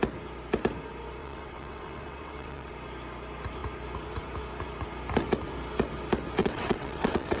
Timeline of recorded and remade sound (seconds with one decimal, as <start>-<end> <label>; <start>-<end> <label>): 0.0-1.2 recorded; 1.2-2.7 remade; 2.7-6.4 recorded; 6.4-7.4 remade